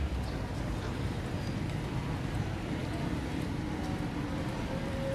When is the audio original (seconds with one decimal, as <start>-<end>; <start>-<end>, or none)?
2.8-3.5